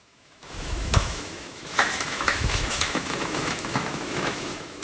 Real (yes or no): no